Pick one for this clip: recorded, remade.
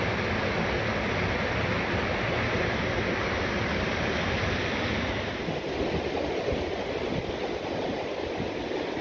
recorded